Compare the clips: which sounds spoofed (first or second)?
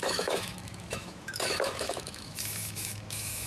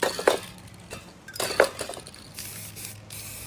first